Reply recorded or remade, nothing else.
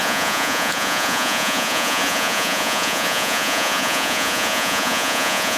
remade